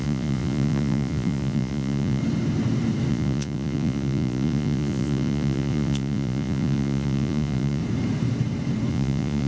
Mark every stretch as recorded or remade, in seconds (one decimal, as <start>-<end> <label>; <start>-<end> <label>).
0.0-2.2 remade; 2.2-3.1 recorded; 3.1-7.8 remade; 7.8-8.9 recorded; 8.9-9.5 remade